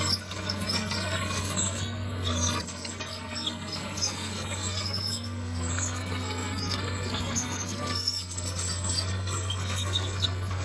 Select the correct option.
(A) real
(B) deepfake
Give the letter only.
B